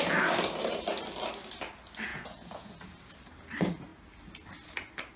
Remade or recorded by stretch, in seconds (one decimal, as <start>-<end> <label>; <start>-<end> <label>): 0.0-2.1 recorded; 2.1-2.7 remade; 2.7-5.2 recorded